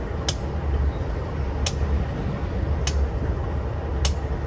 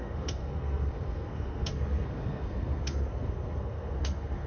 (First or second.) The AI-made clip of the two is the second